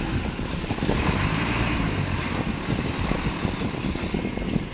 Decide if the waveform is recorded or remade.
recorded